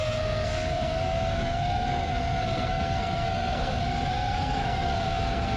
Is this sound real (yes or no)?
no